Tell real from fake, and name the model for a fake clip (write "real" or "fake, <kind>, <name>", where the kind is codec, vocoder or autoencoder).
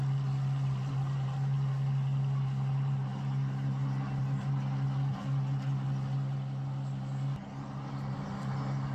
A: real